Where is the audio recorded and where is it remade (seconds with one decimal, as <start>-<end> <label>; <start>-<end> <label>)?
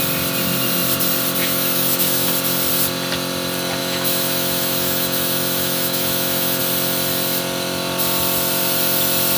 0.0-1.4 recorded; 1.4-2.3 remade; 2.3-3.8 recorded; 3.8-6.6 remade; 6.6-9.4 recorded